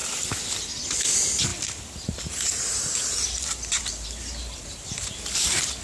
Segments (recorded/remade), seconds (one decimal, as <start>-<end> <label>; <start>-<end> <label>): 0.0-0.8 remade; 0.8-1.5 recorded; 1.5-5.0 remade; 5.0-5.8 recorded